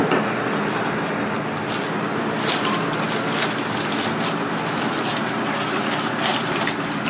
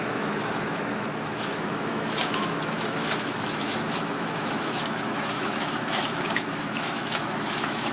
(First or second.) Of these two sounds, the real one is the first